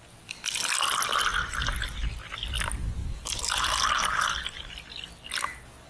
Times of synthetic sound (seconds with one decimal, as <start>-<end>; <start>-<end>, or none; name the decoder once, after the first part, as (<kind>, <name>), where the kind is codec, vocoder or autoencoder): 1.3-2.3 (vocoder, BigVGAN v2); 3.0-4.7

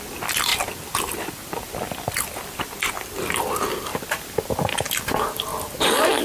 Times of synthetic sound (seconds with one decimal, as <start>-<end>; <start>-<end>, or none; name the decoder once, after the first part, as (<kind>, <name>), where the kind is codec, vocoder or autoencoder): 0.5-2.9 (vocoder, BigVGAN v2); 3.9-4.9

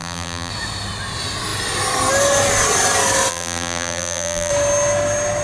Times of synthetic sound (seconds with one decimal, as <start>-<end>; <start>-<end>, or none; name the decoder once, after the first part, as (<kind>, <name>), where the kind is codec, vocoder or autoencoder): 0.0-0.5 (vocoder, BigVGAN v2); 3.3-4.5

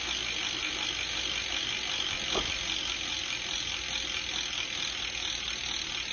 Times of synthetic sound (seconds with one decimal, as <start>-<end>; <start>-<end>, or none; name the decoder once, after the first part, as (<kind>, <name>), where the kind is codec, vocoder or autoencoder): none

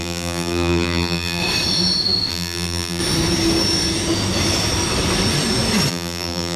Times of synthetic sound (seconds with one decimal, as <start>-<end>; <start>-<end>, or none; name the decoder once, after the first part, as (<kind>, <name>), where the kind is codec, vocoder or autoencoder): 0.0-1.4 (vocoder, BigVGAN v2); 2.3-3.0; 5.9-6.6

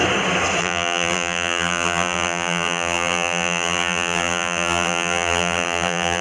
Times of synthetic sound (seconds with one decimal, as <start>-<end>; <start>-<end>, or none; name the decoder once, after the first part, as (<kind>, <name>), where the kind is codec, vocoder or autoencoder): 0.6-6.2 (vocoder, BigVGAN v2)

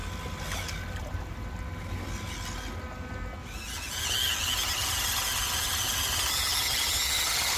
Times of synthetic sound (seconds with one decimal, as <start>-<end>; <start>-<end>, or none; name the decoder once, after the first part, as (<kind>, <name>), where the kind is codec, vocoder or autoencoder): none